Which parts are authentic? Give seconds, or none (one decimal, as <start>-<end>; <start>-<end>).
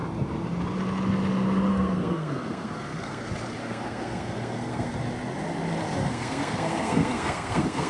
0.0-1.7; 3.2-3.6; 4.9-6.0